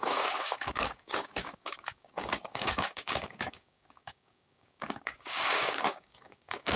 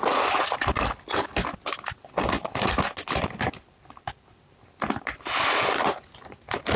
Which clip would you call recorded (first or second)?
second